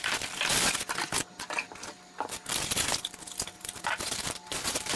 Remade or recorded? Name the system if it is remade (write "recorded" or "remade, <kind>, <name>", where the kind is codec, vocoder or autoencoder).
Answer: recorded